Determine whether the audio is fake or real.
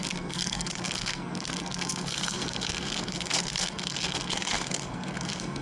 fake